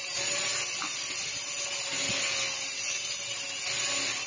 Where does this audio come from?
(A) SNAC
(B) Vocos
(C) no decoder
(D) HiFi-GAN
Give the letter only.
C